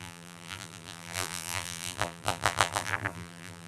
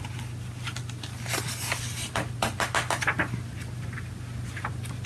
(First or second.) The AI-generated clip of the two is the first